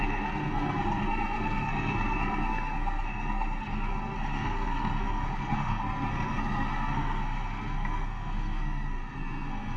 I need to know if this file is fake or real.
fake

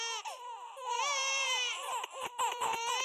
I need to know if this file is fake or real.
fake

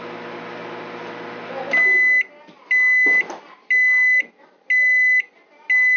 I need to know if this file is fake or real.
real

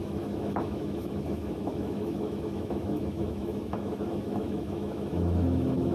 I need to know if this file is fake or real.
fake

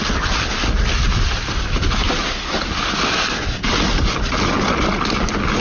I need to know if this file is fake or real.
real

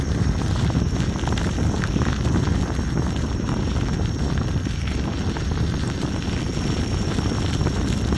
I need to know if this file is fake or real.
real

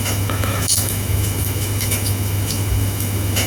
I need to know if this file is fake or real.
fake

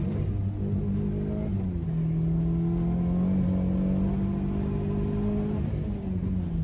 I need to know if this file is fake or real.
real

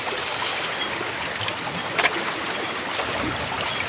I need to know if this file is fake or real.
real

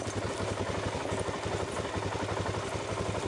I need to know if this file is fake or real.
real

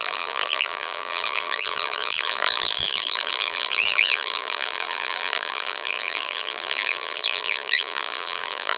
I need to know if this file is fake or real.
fake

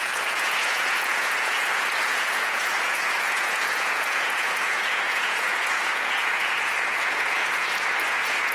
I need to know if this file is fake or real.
fake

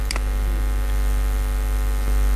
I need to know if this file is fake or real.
real